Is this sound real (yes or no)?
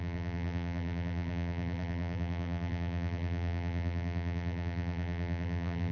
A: no